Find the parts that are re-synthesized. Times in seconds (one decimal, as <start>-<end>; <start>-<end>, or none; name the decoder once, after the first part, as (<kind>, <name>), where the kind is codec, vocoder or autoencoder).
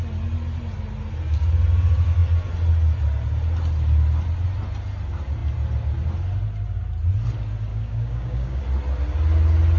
7.7-8.6 (codec, DAC)